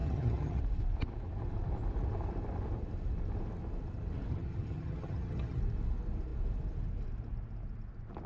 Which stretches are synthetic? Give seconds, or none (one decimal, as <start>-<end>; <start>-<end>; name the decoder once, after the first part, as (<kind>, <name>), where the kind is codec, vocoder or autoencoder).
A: 0.0-0.6 (vocoder, HiFi-GAN); 4.3-5.6